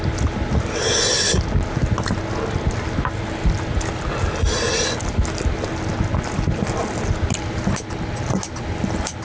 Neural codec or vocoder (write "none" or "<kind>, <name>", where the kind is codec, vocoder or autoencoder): none